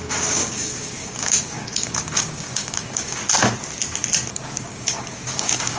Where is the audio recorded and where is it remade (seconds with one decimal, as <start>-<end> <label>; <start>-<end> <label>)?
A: 0.0-3.2 remade; 3.2-4.3 recorded; 4.3-5.8 remade